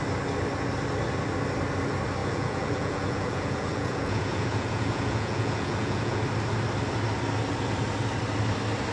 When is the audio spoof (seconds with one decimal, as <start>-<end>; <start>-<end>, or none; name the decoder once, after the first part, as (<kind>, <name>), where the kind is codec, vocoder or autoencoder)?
2.2-6.2 (vocoder, Vocos)